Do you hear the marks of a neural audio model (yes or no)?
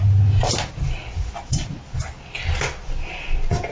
no